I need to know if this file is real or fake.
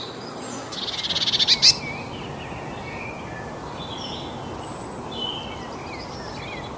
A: real